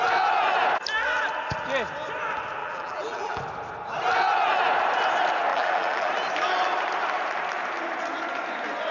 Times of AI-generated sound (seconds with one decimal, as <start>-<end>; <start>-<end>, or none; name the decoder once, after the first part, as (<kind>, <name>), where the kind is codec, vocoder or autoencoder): 2.6-3.4 (vocoder, BigVGAN v2); 5.5-6.1